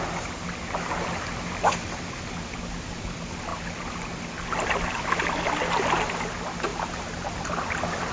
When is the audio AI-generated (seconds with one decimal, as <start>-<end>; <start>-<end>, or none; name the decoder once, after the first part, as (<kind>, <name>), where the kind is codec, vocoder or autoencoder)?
6.7-7.3 (vocoder, BigVGAN v2)